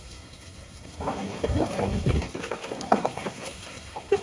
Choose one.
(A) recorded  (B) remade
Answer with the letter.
B